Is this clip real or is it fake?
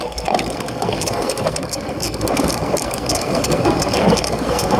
fake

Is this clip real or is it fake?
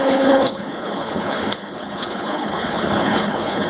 fake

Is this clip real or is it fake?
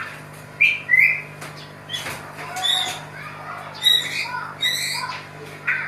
real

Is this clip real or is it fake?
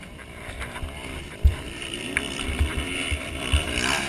fake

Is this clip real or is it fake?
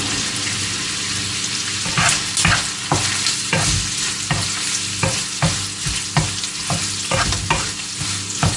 real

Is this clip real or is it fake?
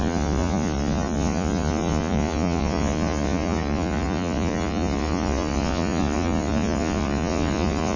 fake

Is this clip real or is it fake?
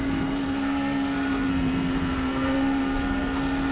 fake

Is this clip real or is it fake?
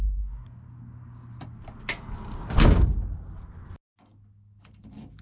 real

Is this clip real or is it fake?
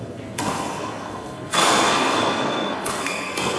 fake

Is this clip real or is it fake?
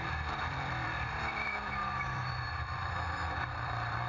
fake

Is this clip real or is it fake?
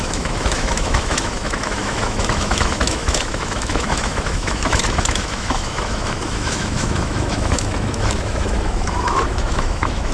fake